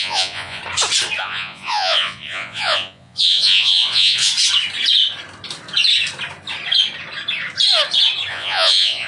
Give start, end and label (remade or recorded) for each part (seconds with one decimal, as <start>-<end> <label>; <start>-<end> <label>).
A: 0.0-0.6 remade; 0.6-1.2 recorded; 1.2-4.3 remade; 4.3-8.3 recorded; 8.3-9.1 remade